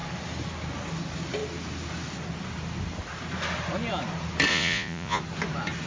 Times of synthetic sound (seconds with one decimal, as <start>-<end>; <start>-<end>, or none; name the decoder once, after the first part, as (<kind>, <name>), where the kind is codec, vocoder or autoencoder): 4.5-5.2 (vocoder, Vocos)